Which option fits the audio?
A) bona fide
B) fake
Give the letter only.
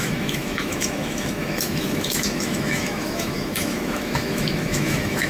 B